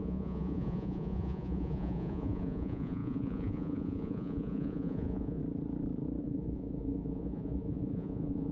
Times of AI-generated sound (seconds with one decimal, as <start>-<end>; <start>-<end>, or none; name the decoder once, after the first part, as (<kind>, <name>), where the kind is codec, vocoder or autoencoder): 0.0-5.4 (vocoder, Vocos); 6.2-8.5

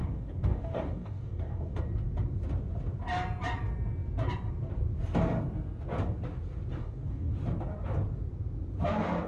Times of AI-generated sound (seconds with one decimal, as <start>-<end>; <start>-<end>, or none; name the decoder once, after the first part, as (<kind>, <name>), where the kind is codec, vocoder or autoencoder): 0.0-1.8 (codec, DAC); 6.7-7.3

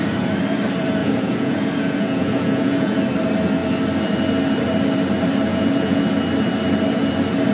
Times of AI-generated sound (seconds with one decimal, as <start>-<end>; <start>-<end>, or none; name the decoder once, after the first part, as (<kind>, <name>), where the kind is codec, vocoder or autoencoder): 1.0-3.0 (vocoder, Vocos); 5.5-6.0